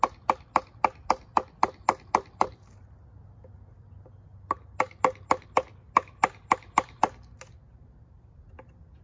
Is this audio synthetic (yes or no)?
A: no